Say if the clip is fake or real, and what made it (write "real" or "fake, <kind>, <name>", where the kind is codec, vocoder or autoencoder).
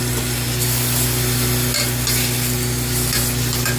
real